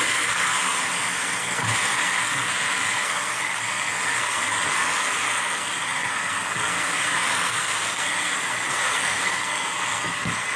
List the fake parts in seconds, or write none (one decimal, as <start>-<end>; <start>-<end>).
0.0-10.6